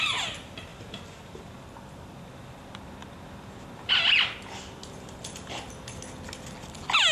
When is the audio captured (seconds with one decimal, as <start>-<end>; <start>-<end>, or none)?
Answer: 0.0-0.7; 1.5-4.8; 6.0-7.1